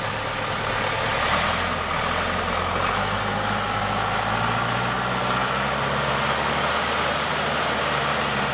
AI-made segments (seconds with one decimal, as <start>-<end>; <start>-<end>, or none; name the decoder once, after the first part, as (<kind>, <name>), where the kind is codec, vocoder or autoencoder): none